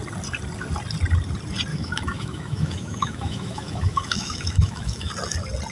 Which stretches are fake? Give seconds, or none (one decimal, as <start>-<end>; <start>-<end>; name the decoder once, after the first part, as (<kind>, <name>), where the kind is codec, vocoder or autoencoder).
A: 1.7-5.1 (autoencoder, DAC-VAE)